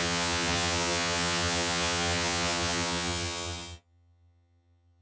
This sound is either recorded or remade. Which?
remade